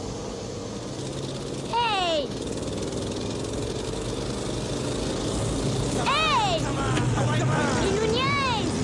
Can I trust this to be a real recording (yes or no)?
yes